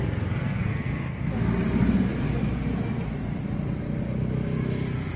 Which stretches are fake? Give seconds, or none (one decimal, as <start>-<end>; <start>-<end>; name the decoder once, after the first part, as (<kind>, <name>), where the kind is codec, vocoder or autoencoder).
0.4-0.9 (codec, SNAC)